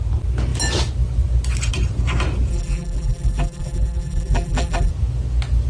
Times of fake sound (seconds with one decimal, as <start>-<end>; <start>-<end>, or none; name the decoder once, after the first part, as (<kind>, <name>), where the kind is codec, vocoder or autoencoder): 2.5-4.9 (vocoder, BigVGAN v2)